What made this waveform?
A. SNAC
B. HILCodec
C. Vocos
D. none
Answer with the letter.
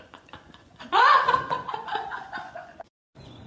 C